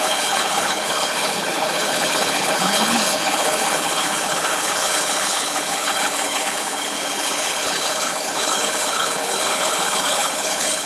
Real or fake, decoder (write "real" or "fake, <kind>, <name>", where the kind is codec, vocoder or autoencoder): fake, codec, HILCodec